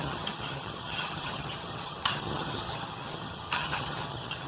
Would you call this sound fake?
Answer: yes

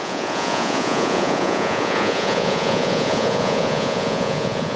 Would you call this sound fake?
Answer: yes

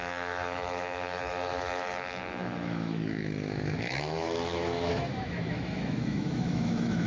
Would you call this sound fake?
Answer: yes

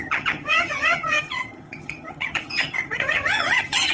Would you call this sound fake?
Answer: yes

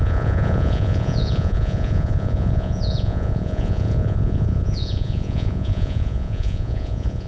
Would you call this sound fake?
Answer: yes